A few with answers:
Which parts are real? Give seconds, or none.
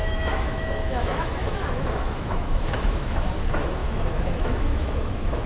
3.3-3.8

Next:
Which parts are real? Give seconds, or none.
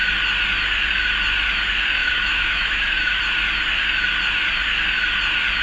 0.0-2.0; 3.2-5.6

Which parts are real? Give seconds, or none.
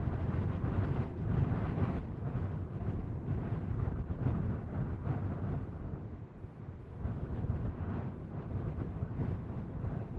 0.0-6.8; 7.4-8.5; 9.0-10.2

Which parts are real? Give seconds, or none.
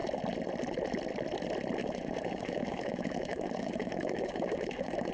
0.0-1.8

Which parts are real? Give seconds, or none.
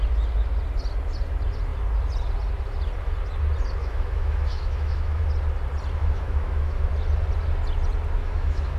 0.0-3.8; 5.2-6.0; 6.9-8.2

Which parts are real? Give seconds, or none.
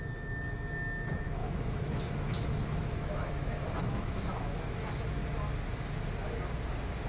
5.2-7.1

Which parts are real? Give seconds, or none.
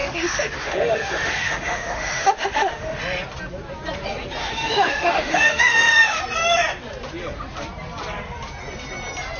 3.0-4.4; 6.2-9.4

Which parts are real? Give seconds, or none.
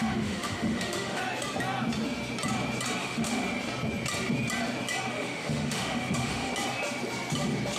1.2-3.0; 3.4-5.1; 6.5-7.8